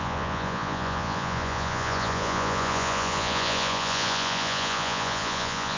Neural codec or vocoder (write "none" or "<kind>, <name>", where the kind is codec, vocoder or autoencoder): vocoder, Vocos